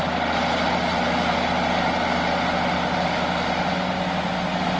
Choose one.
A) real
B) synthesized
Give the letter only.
A